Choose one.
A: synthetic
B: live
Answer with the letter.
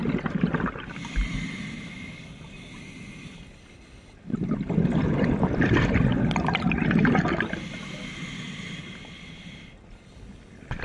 B